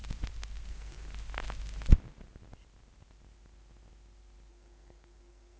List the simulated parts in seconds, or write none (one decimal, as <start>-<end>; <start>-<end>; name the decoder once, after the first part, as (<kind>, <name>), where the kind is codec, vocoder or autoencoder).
0.7-1.1 (codec, SNAC); 4.5-5.6